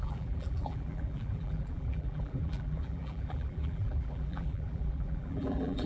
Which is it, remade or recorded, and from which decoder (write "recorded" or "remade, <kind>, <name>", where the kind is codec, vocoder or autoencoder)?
remade, vocoder, BigVGAN v2